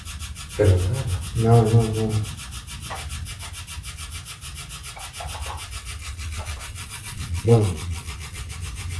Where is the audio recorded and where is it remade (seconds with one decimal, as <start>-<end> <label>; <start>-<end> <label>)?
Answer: 0.0-6.0 recorded; 6.0-8.5 remade; 8.5-9.0 recorded